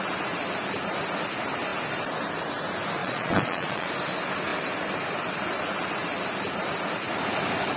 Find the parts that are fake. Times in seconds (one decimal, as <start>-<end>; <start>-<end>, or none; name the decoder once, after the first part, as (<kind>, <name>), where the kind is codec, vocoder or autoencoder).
3.0-3.9 (vocoder, Vocos)